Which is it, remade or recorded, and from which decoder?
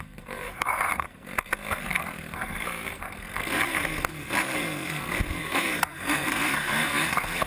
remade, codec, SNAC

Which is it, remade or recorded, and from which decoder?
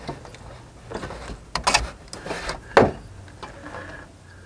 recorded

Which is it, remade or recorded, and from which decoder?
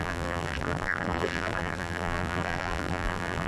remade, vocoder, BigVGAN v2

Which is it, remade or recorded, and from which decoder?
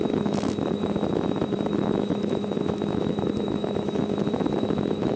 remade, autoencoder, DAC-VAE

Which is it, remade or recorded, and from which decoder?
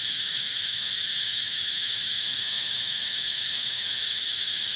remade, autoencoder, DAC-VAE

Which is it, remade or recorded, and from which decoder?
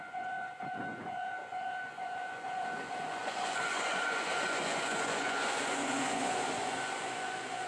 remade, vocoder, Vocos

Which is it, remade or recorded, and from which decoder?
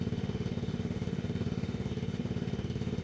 remade, autoencoder, DAC-VAE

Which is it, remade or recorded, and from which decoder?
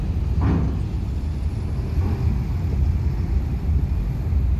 recorded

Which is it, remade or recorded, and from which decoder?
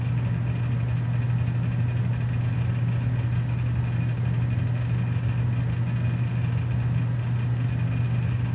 recorded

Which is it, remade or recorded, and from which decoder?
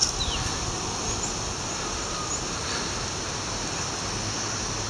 recorded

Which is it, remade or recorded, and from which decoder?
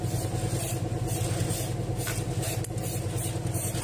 recorded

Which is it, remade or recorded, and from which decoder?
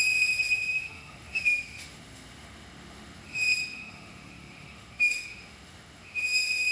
remade, autoencoder, DAC-VAE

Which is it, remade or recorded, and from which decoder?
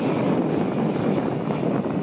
recorded